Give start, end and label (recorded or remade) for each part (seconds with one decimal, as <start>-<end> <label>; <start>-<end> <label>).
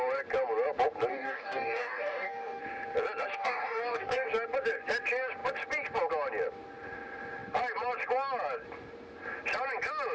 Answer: 0.0-1.1 recorded; 1.1-2.6 remade; 2.6-3.3 recorded; 3.3-4.3 remade; 4.3-10.1 recorded